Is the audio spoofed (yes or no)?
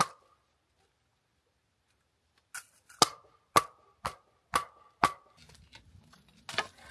no